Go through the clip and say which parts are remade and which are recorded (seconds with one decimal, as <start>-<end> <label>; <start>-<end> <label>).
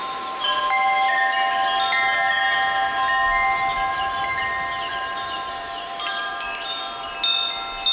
0.0-0.6 remade; 0.6-3.9 recorded; 3.9-4.4 remade; 4.4-4.9 recorded; 4.9-7.1 remade; 7.1-7.9 recorded